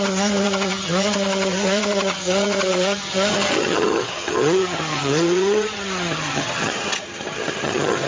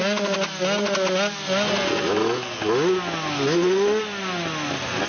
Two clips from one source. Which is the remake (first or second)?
first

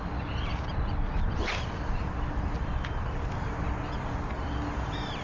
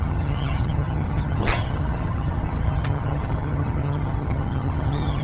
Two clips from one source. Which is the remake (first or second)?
second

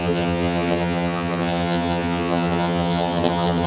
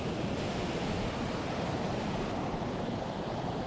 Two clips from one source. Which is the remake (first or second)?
first